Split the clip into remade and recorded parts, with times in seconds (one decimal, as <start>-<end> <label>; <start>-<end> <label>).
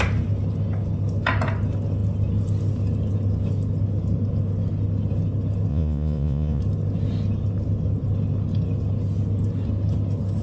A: 0.0-5.7 recorded; 5.7-6.6 remade; 6.6-10.4 recorded